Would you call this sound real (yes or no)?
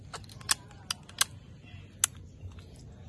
yes